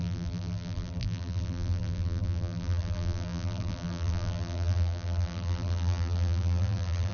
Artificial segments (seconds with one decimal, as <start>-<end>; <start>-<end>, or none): 0.0-7.1